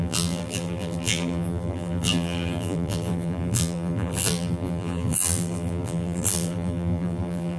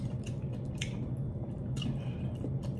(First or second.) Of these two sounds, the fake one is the first